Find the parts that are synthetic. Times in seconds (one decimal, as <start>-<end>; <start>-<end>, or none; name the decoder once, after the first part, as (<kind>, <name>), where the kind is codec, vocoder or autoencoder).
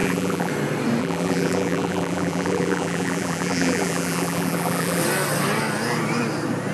0.0-0.5 (vocoder, BigVGAN v2); 1.0-5.0